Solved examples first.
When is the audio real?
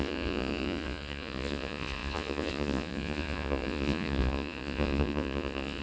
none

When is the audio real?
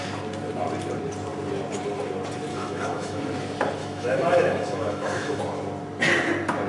0.0-2.5; 3.2-3.8; 5.4-6.7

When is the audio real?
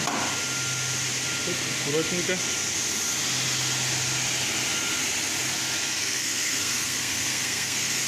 0.0-6.0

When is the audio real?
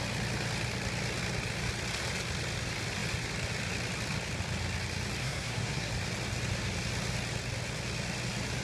0.0-5.2; 5.9-8.6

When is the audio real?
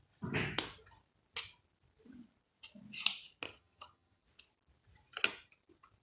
0.0-3.5; 4.2-6.0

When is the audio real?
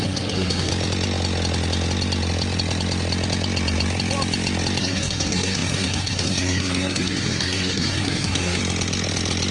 0.7-4.8; 8.6-9.5